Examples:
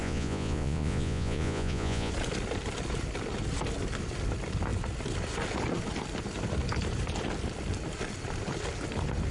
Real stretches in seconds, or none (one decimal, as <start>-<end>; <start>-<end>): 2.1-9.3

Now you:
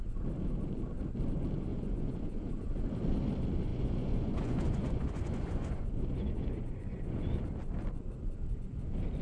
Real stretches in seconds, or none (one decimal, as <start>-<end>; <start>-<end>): 0.0-1.7; 2.6-3.7; 7.4-9.2

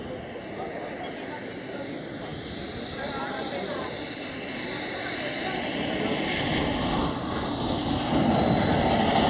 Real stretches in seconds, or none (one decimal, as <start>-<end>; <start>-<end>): 0.0-2.3; 5.8-9.3

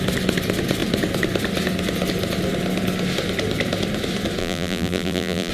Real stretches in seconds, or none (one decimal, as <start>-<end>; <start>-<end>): 0.0-4.4